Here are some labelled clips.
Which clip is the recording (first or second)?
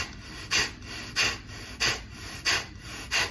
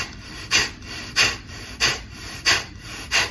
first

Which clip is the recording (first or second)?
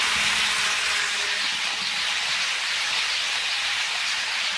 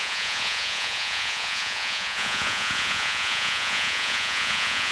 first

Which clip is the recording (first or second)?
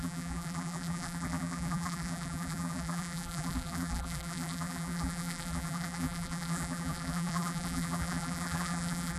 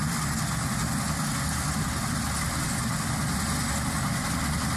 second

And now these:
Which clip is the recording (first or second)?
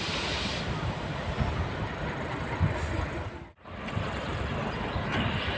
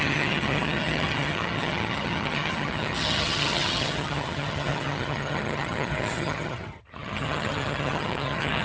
first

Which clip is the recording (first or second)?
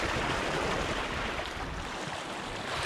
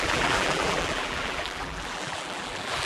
first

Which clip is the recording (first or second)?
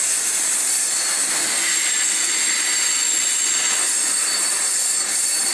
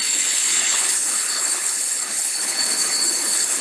first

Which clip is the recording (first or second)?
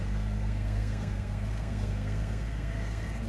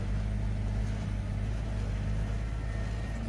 second